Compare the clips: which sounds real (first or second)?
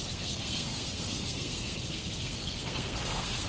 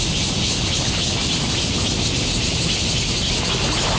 second